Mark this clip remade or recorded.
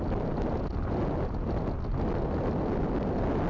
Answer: recorded